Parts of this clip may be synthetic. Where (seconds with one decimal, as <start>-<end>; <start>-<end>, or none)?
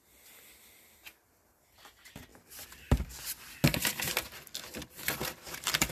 none